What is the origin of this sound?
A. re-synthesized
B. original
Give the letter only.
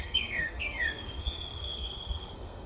A